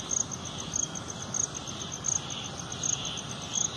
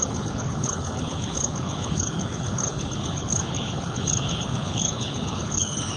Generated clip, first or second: second